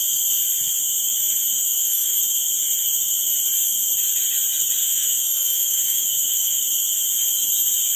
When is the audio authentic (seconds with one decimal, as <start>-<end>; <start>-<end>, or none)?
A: 0.0-1.5; 2.2-4.8; 6.6-8.0